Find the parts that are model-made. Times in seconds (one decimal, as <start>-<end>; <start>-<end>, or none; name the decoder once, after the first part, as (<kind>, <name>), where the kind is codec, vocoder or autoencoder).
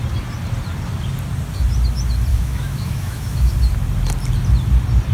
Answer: 2.3-3.5 (autoencoder, DAC-VAE)